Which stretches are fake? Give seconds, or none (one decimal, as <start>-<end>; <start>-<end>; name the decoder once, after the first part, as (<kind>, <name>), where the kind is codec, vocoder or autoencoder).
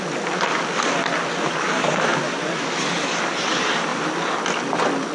2.1-3.1 (vocoder, BigVGAN v2)